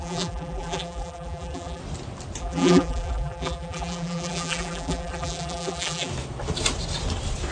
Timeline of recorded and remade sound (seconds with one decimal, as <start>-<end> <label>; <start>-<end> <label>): 0.0-1.8 remade; 1.8-2.4 recorded; 2.4-6.1 remade; 6.1-7.5 recorded